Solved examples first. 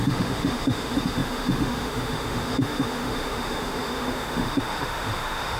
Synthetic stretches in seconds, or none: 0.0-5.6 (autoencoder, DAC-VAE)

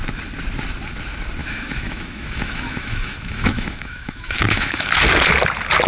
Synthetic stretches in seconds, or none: 1.4-4.9 (autoencoder, DAC-VAE)

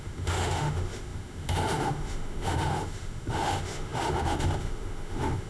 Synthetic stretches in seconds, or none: 0.0-5.5 (autoencoder, DAC-VAE)

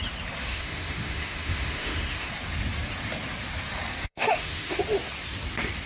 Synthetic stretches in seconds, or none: 0.5-2.3 (autoencoder, DAC-VAE); 4.0-4.8

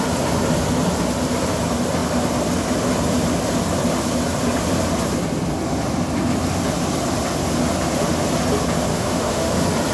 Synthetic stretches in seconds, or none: 8.9-9.5 (autoencoder, DAC-VAE)

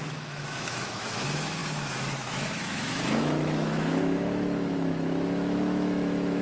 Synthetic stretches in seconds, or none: 0.0-6.4 (autoencoder, DAC-VAE)

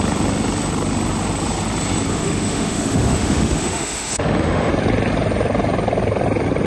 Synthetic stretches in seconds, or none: 2.1-4.7 (autoencoder, DAC-VAE)

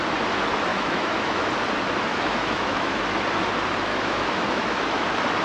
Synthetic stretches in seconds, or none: 0.7-1.5 (autoencoder, DAC-VAE); 2.1-3.0; 3.9-5.0